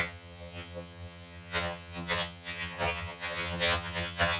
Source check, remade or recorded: remade